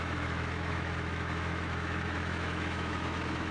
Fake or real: fake